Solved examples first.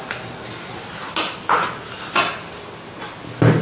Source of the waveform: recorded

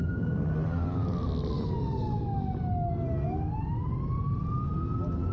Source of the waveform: recorded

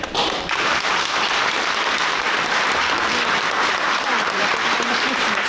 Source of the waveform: remade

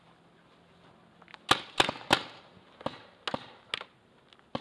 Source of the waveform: recorded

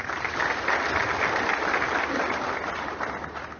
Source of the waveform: recorded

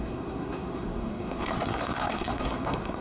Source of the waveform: remade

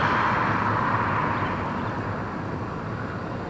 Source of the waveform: recorded